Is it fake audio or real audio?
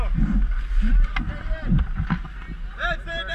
real